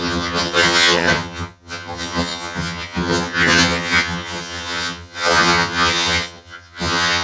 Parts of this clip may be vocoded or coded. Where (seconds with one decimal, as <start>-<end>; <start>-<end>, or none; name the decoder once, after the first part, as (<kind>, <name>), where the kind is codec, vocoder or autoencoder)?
0.0-7.2 (vocoder, HiFi-GAN)

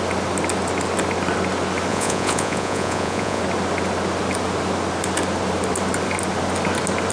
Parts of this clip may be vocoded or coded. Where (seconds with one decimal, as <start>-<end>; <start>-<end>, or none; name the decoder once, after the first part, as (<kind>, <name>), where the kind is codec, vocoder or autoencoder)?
1.9-3.4 (vocoder, Vocos)

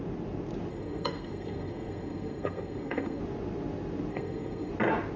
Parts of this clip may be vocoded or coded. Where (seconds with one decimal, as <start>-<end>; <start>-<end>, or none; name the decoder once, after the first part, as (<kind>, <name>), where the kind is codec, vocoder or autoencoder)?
0.7-3.2 (codec, SNAC); 4.1-4.7

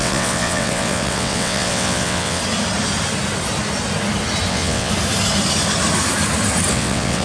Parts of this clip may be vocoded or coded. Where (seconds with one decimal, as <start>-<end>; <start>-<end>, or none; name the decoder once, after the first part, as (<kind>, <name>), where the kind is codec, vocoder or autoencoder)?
0.0-2.4 (vocoder, WaveNeXt); 4.5-4.9; 6.7-7.2

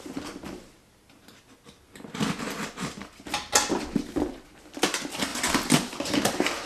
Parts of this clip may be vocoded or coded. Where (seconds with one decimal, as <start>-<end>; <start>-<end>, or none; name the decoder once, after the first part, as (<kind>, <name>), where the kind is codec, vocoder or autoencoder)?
none

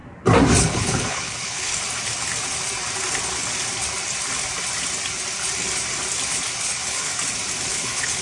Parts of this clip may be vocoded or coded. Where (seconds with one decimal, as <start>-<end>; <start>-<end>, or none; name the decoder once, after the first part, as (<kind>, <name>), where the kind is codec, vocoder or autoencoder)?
0.6-1.7 (codec, HILCodec); 6.6-7.1; 7.7-8.2